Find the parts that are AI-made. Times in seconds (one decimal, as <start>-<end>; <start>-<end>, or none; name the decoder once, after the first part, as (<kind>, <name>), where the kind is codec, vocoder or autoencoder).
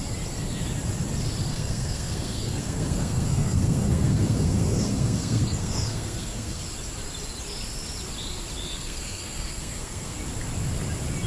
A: 1.5-6.6 (codec, SNAC); 8.7-10.2